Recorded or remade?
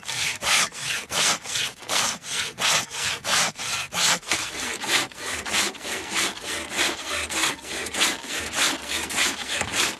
remade